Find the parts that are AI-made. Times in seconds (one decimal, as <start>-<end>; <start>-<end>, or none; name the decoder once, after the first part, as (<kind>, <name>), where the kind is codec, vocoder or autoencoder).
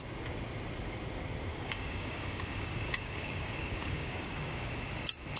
1.5-4.7 (codec, DAC)